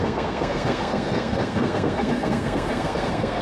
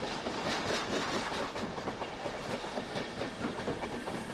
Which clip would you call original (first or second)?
second